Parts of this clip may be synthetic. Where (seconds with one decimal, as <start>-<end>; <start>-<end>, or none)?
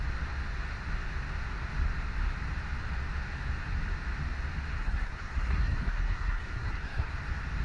4.7-7.1